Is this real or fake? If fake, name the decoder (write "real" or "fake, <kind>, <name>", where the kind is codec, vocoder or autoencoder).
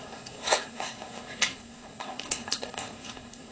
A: fake, codec, SNAC